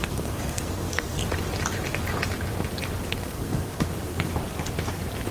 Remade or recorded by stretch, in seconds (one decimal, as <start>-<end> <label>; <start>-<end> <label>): 0.0-1.2 remade; 1.2-3.1 recorded; 3.1-4.3 remade; 4.3-5.3 recorded

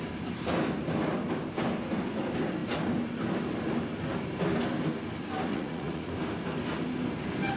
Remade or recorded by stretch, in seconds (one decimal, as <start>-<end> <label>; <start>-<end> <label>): 0.0-5.5 recorded; 5.5-6.1 remade; 6.1-7.6 recorded

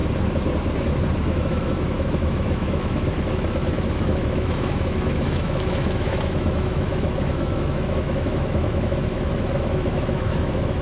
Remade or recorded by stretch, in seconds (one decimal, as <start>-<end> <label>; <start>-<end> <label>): 0.0-1.2 recorded; 1.2-10.8 remade

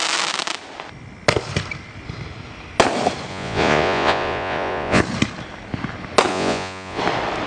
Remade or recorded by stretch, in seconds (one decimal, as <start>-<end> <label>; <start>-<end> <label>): 0.0-3.3 recorded; 3.3-5.0 remade; 5.0-6.3 recorded; 6.3-7.0 remade; 7.0-7.5 recorded